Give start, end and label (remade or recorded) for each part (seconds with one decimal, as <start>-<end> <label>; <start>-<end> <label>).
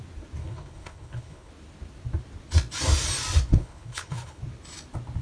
0.0-0.4 recorded; 0.4-1.5 remade; 1.5-3.5 recorded; 3.5-4.4 remade; 4.4-5.2 recorded